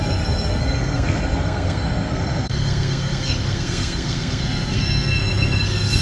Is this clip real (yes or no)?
no